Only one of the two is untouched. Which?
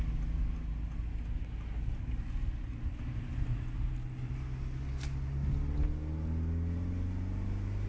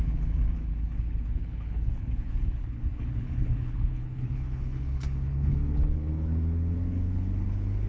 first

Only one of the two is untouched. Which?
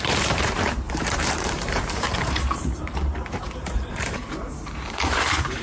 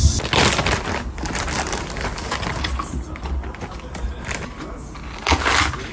second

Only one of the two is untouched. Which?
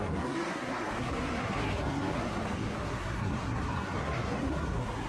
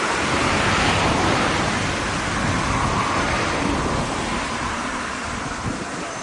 second